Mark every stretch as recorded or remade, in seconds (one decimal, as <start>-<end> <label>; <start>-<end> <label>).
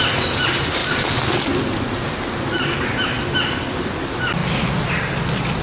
0.0-5.6 recorded